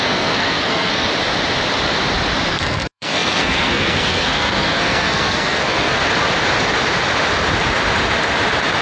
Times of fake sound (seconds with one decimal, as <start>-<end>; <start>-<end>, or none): 0.0-1.1; 2.5-6.0